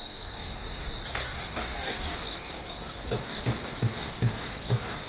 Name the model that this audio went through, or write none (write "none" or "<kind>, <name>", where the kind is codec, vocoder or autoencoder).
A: codec, DAC